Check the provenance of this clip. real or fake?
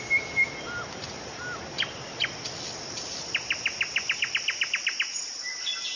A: real